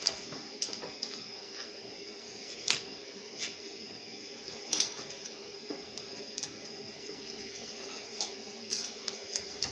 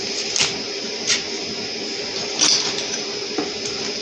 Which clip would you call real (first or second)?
second